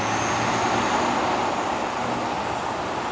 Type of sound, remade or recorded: recorded